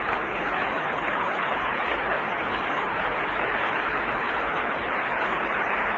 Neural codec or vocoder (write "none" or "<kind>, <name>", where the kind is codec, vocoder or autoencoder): codec, HILCodec